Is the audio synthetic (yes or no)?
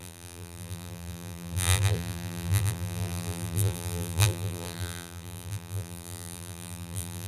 yes